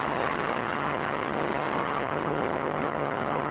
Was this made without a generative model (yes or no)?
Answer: no